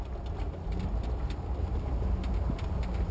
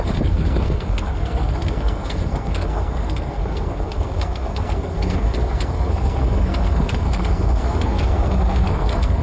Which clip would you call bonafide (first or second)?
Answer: first